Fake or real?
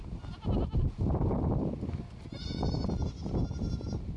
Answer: real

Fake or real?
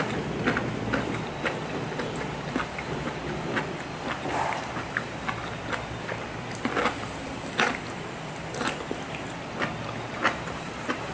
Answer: fake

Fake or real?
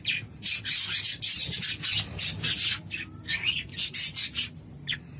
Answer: real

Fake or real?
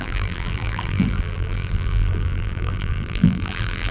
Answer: fake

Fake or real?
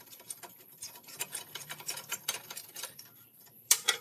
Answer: fake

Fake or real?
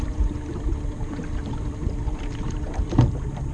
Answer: real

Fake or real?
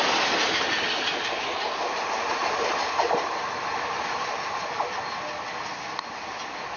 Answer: real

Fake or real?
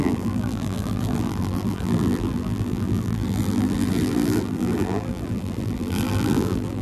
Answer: fake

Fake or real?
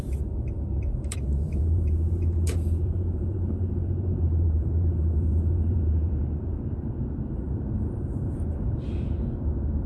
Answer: fake